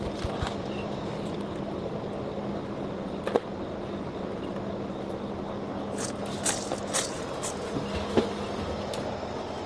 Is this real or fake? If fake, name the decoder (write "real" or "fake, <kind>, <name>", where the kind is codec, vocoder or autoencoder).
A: real